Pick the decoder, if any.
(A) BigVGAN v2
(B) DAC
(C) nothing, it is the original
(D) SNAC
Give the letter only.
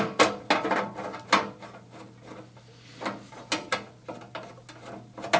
C